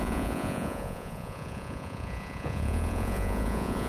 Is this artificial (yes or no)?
yes